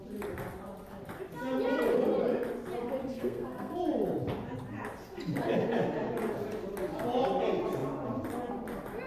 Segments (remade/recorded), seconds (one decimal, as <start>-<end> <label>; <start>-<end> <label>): 0.0-3.0 recorded; 3.0-3.8 remade; 3.8-9.1 recorded